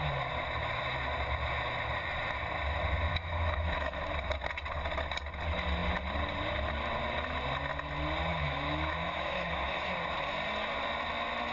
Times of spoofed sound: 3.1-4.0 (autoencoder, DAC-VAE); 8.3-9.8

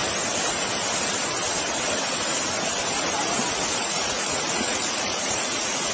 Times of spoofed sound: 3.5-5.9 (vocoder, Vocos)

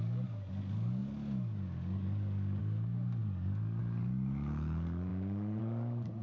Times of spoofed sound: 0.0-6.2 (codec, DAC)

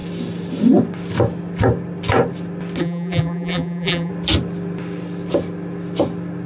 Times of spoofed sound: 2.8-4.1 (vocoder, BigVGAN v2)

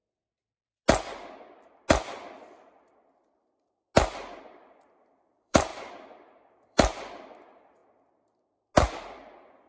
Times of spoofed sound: 4.4-5.7 (vocoder, BigVGAN v2); 6.5-7.8; 8.9-9.7

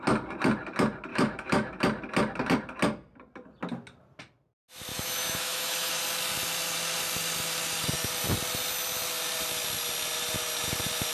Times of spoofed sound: 1.1-1.8 (autoencoder, DAC-VAE); 4.9-5.9